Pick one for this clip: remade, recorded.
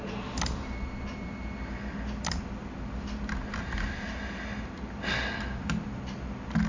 recorded